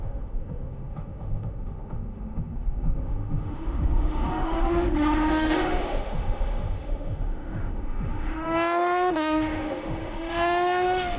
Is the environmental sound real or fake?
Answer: fake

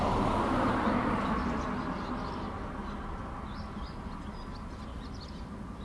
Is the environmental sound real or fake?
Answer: real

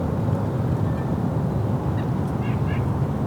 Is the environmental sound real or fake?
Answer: real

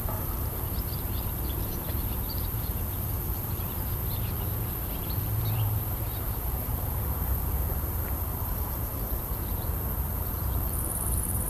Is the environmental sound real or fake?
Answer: fake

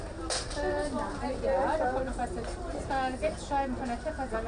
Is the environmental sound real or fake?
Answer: real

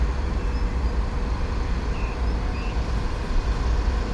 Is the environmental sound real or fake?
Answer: real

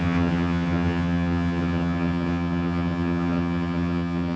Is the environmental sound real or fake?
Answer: fake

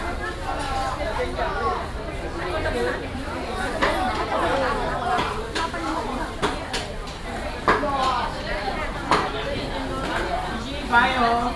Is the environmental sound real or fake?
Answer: real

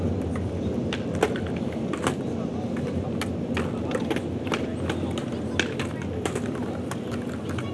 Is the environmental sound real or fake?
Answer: real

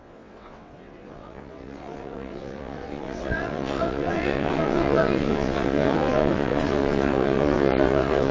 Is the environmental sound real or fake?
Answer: fake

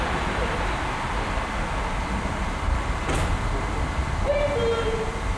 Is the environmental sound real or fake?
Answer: real